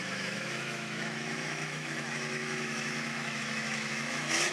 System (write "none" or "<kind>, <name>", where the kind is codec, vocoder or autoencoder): autoencoder, DAC-VAE